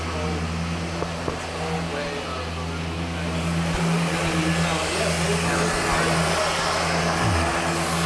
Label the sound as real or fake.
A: real